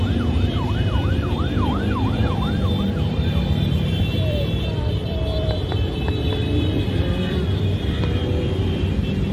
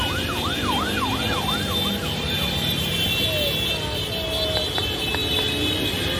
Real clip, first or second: second